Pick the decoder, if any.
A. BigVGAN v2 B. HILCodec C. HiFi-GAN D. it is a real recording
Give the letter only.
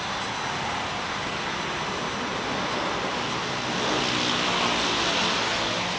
D